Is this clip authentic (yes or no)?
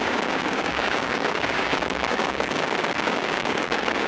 no